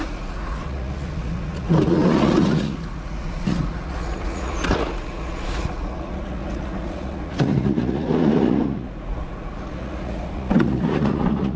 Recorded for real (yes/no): no